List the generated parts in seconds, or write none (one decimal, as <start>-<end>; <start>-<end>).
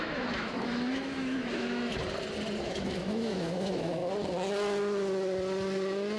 0.0-1.9; 2.6-4.0